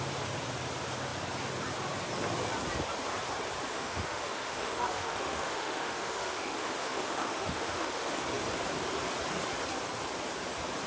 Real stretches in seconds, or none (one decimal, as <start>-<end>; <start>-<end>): 0.0-3.7; 8.2-10.9

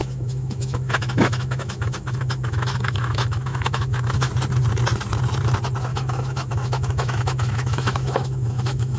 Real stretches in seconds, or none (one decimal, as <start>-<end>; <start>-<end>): 4.3-5.9

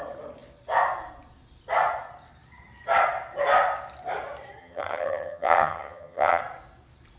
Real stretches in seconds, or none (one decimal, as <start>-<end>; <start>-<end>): 0.0-4.6; 6.4-7.2